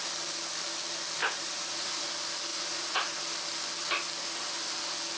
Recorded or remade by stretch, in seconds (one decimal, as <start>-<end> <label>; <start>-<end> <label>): 0.0-1.2 recorded; 1.2-2.1 remade; 2.1-2.5 recorded; 2.5-3.2 remade; 3.2-5.2 recorded